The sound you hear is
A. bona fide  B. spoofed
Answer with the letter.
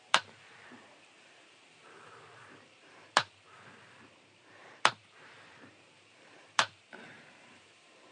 B